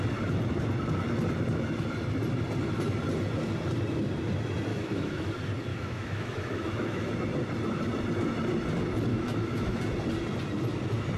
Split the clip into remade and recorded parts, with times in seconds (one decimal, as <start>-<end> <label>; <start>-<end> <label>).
0.0-4.7 recorded; 4.7-5.3 remade; 5.3-5.7 recorded; 5.7-7.1 remade; 7.1-9.1 recorded; 9.1-9.8 remade; 9.8-11.2 recorded